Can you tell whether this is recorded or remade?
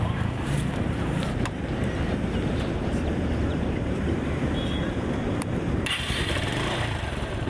remade